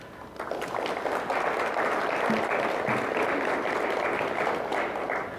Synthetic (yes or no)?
no